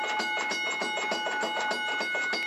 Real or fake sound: real